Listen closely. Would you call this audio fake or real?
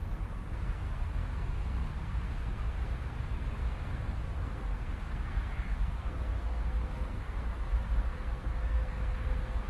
fake